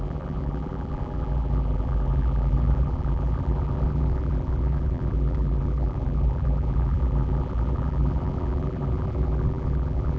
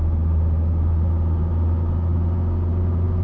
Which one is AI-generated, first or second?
first